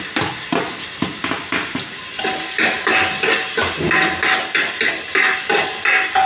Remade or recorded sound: recorded